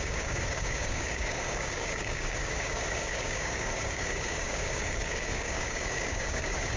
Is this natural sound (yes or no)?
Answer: no